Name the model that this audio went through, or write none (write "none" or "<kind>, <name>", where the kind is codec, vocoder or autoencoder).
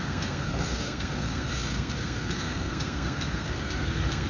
codec, SNAC